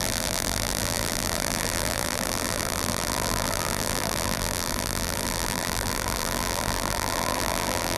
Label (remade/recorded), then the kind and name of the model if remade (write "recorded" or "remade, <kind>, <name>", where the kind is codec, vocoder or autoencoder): remade, vocoder, BigVGAN v2